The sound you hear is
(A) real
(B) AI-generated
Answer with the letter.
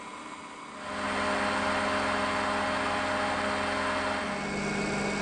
A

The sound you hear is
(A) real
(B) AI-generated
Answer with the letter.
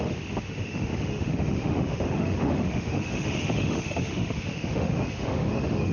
B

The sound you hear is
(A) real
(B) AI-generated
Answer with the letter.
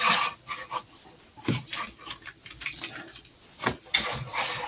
A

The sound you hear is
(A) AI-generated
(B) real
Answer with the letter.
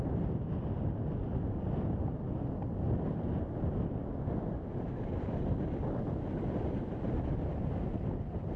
B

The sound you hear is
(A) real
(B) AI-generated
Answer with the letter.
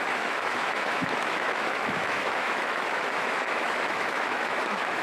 B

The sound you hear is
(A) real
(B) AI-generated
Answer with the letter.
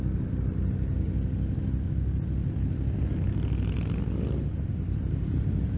A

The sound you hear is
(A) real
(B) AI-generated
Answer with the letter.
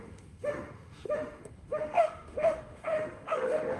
B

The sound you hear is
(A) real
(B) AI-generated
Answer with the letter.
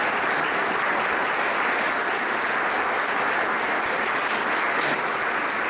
A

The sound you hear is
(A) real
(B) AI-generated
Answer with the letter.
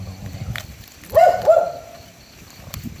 A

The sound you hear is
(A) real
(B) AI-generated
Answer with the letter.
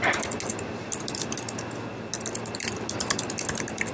A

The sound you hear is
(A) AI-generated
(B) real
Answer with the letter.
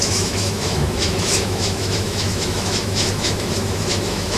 A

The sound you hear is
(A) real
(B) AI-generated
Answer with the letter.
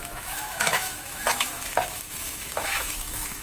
B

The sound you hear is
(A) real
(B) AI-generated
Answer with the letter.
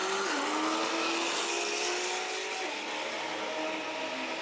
A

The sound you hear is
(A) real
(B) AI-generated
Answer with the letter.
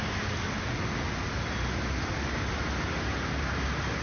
A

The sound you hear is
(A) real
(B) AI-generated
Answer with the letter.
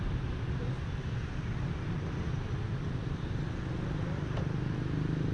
A